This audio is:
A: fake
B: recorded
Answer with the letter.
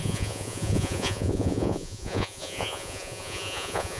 A